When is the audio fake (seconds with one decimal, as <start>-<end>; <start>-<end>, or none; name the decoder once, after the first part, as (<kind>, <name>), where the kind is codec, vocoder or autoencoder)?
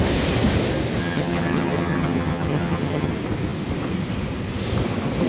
1.0-3.1 (vocoder, HiFi-GAN)